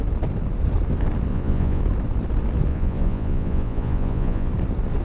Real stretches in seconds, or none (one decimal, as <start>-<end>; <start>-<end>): 0.0-1.3; 1.8-2.7; 4.5-5.0